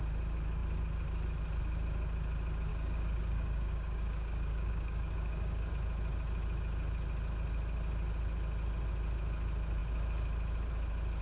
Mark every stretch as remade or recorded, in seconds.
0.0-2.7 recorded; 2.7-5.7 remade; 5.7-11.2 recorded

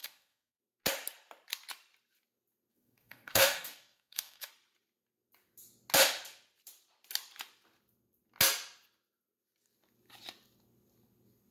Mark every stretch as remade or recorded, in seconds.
0.0-0.6 remade; 0.6-2.7 recorded; 2.7-4.5 remade; 4.5-11.5 recorded

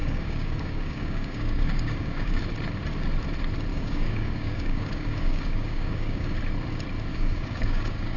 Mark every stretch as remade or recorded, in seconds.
0.0-2.4 remade; 2.4-3.7 recorded; 3.7-6.4 remade; 6.4-7.1 recorded; 7.1-8.2 remade

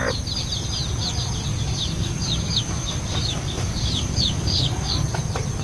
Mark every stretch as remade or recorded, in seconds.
0.0-1.5 recorded; 1.5-4.9 remade; 4.9-5.6 recorded

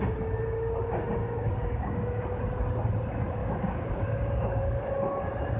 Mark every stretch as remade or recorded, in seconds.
0.0-1.2 recorded; 1.2-2.4 remade; 2.4-3.4 recorded; 3.4-4.8 remade; 4.8-5.6 recorded